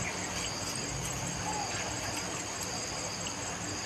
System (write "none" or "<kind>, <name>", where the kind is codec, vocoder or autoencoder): none